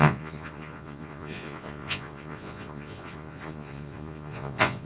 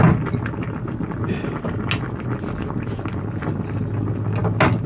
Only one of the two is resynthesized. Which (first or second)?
first